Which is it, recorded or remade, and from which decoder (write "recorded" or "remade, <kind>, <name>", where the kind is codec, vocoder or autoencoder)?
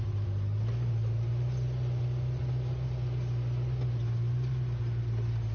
recorded